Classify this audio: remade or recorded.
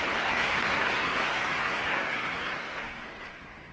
remade